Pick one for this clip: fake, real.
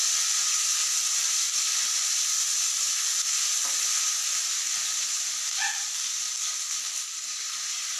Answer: real